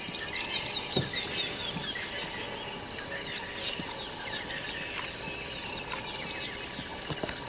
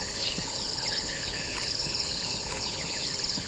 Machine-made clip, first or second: second